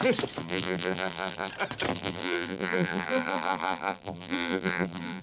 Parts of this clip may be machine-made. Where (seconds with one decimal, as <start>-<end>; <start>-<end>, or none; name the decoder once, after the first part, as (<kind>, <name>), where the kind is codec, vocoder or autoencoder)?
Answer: 0.4-1.5 (vocoder, BigVGAN v2); 1.9-5.2